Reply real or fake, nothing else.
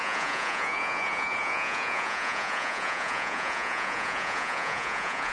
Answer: fake